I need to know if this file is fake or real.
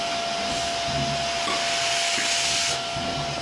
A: real